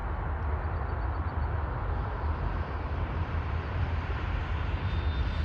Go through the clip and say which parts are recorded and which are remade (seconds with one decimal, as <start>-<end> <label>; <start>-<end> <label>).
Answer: 0.0-3.2 recorded; 3.2-4.4 remade; 4.4-5.4 recorded